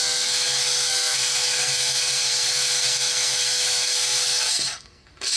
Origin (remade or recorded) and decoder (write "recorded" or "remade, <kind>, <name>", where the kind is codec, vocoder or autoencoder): remade, codec, SNAC